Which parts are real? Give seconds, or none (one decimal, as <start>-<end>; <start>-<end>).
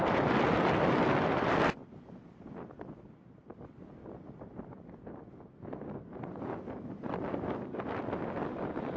0.0-9.0